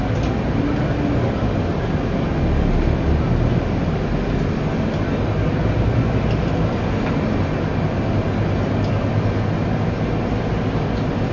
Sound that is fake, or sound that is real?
real